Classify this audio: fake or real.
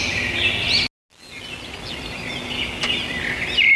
real